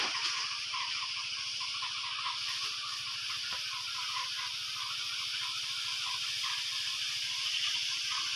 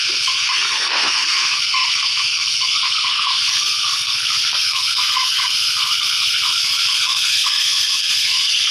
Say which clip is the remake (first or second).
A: second